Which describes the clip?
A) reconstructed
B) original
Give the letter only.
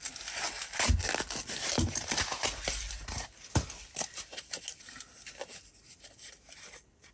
B